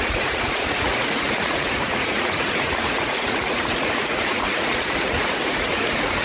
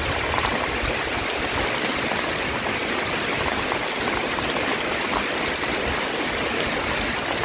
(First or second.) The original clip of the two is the second